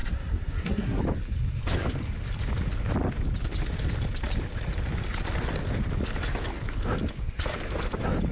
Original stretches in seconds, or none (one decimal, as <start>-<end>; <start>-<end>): 1.0-8.3